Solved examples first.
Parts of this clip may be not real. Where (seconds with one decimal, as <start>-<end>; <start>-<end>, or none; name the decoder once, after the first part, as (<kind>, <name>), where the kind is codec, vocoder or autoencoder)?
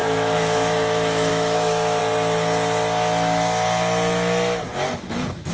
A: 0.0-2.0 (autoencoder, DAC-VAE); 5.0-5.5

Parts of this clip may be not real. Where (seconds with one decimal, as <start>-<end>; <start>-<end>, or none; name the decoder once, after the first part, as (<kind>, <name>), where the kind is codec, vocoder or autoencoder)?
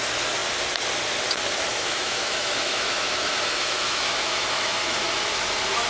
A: 1.7-5.2 (autoencoder, DAC-VAE)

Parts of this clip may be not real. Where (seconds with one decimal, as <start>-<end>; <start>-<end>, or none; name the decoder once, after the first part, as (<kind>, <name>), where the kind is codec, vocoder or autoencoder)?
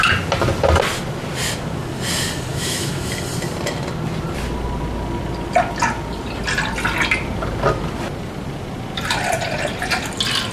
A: 2.5-3.1 (autoencoder, DAC-VAE)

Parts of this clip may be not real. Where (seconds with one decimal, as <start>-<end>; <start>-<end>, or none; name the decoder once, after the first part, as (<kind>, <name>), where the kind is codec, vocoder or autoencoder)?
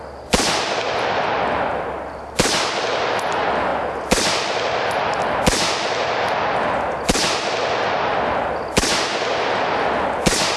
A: none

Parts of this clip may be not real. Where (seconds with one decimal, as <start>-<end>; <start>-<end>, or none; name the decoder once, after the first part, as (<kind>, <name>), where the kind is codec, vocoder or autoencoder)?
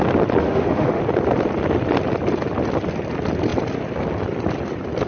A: 0.4-1.0 (autoencoder, DAC-VAE)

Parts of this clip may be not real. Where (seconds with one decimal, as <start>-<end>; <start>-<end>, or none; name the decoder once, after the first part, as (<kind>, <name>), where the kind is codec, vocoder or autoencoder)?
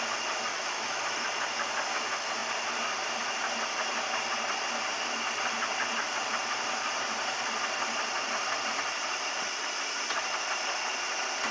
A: 0.5-1.0 (autoencoder, DAC-VAE)